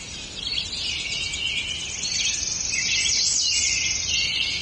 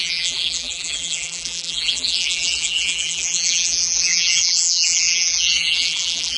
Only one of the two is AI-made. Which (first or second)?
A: second